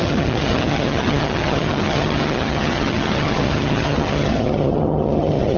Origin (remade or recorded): remade